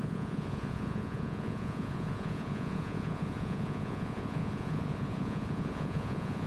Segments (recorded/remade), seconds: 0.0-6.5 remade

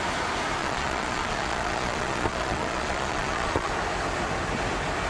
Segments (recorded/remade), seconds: 0.0-0.6 recorded; 0.6-3.7 remade; 3.7-5.1 recorded

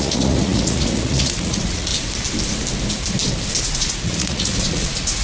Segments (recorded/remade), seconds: 0.0-1.9 remade; 1.9-3.6 recorded; 3.6-5.2 remade

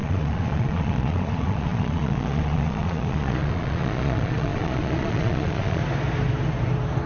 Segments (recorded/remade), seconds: 0.0-5.8 remade; 5.8-7.1 recorded

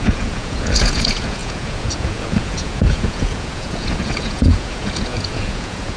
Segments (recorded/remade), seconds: 0.0-6.0 remade

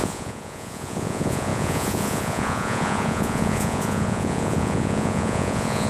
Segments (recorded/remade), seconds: 0.0-5.9 remade